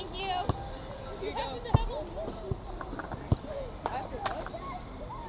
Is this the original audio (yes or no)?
yes